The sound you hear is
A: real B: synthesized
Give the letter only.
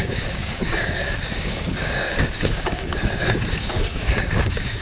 B